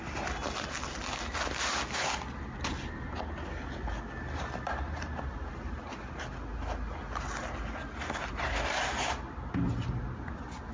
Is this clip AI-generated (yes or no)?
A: no